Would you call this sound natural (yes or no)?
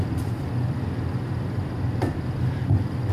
yes